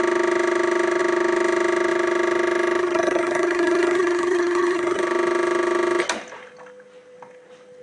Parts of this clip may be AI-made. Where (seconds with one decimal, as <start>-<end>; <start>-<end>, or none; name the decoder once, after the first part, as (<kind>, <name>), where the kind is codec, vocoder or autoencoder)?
2.8-5.0 (codec, SNAC)